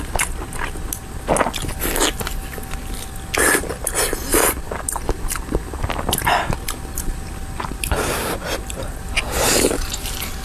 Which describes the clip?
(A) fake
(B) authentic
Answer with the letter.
B